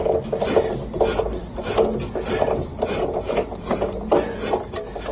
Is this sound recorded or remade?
recorded